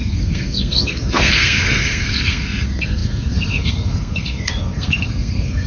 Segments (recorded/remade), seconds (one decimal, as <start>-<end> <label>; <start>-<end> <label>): 0.0-5.7 remade